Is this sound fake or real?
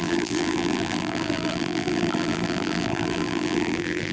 fake